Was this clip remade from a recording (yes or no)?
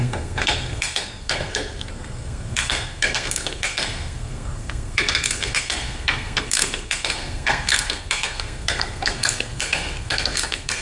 yes